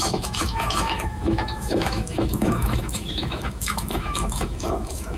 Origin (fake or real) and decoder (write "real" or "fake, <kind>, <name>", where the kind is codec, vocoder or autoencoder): fake, autoencoder, DAC-VAE